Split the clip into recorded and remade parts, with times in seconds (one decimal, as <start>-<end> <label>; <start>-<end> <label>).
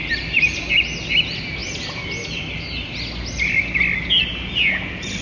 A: 0.0-5.2 recorded